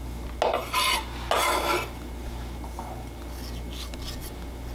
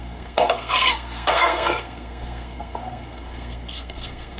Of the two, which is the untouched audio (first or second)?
first